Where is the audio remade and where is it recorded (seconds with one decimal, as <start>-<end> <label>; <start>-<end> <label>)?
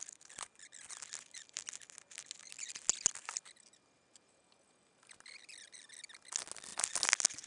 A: 0.0-7.5 recorded